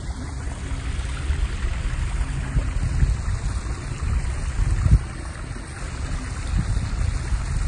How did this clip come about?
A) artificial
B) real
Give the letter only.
B